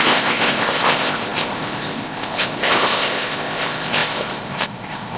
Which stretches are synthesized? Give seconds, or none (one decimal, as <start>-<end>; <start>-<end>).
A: 0.0-5.2